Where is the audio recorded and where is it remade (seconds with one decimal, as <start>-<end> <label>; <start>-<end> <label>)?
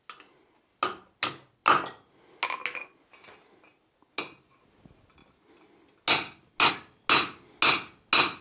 0.0-8.4 recorded